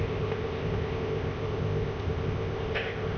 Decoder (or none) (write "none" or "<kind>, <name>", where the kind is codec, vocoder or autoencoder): codec, ZipCodec